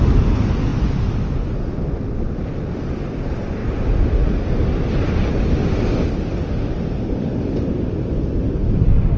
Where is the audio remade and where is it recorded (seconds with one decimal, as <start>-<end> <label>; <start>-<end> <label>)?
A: 0.0-9.2 recorded